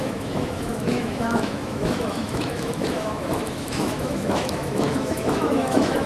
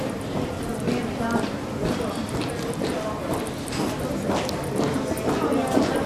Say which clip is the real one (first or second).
second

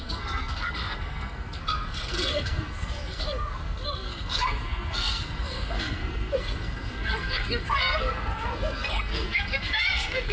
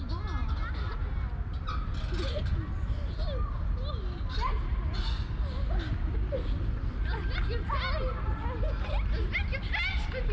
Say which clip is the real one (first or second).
second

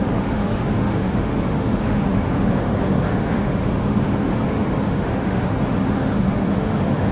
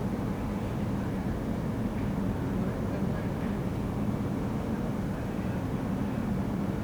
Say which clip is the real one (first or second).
second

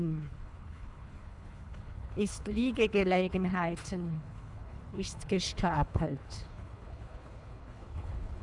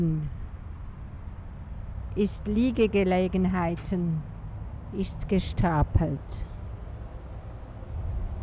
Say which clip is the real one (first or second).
second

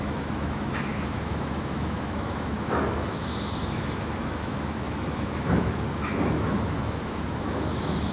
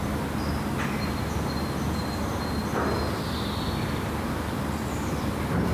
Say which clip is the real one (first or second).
second